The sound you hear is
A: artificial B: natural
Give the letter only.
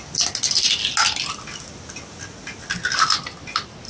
B